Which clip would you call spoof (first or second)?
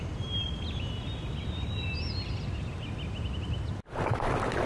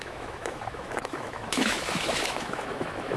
second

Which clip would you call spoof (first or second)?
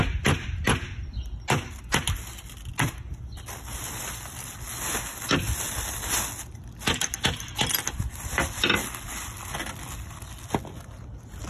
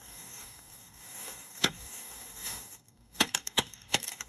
second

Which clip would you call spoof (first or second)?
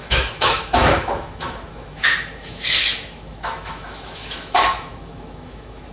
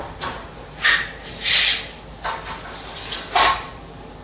first